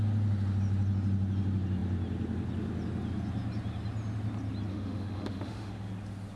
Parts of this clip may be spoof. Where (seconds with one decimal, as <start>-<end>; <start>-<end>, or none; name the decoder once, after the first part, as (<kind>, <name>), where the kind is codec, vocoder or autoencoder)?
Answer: 4.7-5.9 (autoencoder, DAC-VAE)